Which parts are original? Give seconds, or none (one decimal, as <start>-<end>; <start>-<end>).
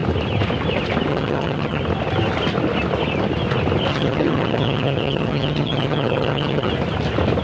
0.0-1.1; 1.8-3.9; 6.7-7.4